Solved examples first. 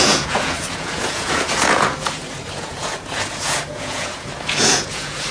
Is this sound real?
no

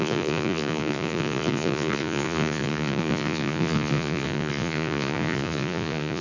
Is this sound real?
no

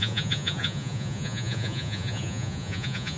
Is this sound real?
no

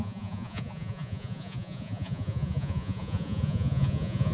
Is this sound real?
no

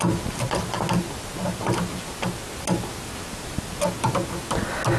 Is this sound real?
yes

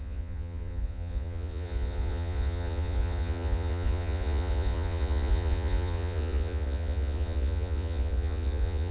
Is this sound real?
no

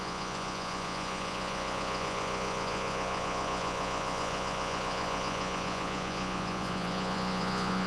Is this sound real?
no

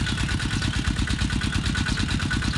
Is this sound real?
yes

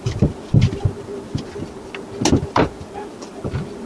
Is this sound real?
yes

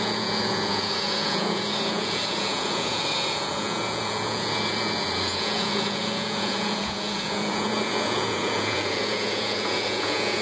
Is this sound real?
no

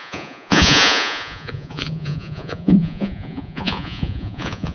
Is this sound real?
no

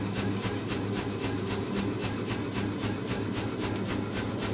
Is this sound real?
yes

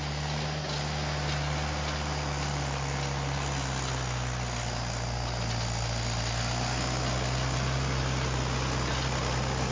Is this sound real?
yes